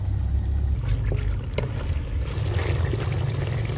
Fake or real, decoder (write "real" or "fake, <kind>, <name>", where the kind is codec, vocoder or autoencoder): real